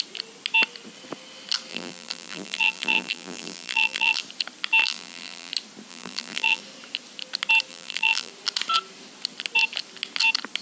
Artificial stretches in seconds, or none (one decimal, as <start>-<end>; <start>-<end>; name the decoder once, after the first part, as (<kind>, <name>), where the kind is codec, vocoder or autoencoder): 1.7-4.2 (vocoder, BigVGAN v2); 4.8-5.5; 5.9-6.6; 7.7-8.3